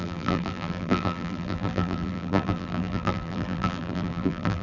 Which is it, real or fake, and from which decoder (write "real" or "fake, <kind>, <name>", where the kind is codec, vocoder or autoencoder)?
fake, vocoder, BigVGAN v2